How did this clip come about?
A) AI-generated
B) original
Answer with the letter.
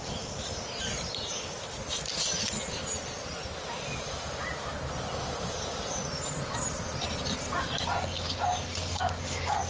B